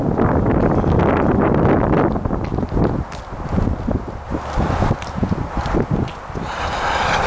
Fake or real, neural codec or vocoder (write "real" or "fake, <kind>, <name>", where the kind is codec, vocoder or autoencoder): real